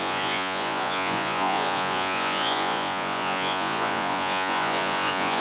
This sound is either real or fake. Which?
fake